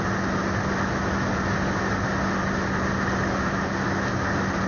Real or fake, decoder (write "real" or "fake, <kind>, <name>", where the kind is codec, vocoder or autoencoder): real